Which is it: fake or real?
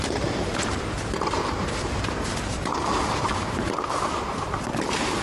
fake